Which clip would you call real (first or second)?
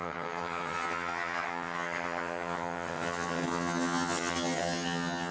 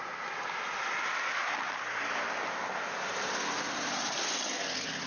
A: second